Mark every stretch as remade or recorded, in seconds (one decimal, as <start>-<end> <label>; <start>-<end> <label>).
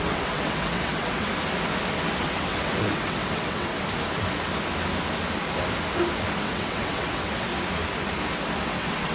0.0-1.3 remade; 1.3-2.2 recorded; 2.2-3.7 remade; 3.7-6.4 recorded; 6.4-7.5 remade; 7.5-8.7 recorded; 8.7-9.1 remade